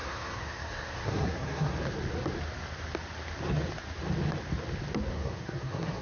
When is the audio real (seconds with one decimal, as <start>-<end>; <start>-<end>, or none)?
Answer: 1.7-5.1